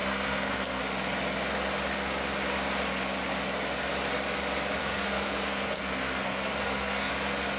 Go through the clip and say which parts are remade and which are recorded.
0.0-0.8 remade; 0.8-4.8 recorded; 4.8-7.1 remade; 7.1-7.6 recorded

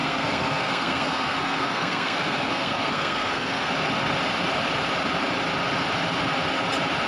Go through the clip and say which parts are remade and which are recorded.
0.0-3.7 remade; 3.7-7.1 recorded

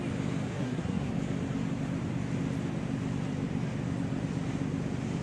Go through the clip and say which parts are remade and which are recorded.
0.0-0.5 recorded; 0.5-1.1 remade; 1.1-5.2 recorded

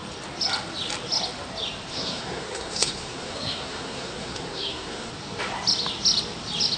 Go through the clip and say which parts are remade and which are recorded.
0.0-1.9 recorded; 1.9-5.1 remade; 5.1-6.8 recorded

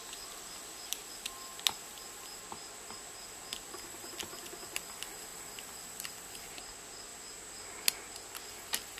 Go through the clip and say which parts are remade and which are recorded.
0.0-9.0 recorded

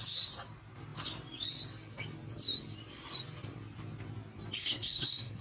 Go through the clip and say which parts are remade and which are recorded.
0.0-4.6 recorded; 4.6-5.4 remade